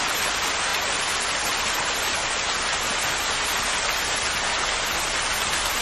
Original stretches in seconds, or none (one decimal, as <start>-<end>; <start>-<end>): 0.0-5.8